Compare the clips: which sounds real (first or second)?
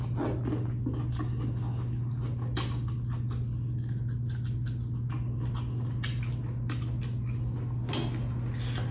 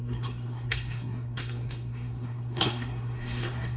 first